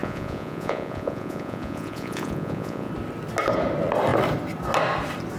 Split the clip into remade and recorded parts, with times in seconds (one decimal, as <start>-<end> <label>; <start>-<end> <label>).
0.0-2.9 remade; 2.9-5.4 recorded